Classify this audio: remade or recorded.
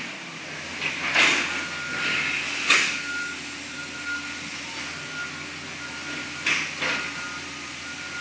recorded